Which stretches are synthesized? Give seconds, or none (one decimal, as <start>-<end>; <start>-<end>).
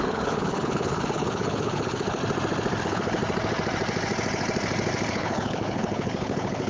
0.0-2.2; 2.8-3.2; 5.1-6.7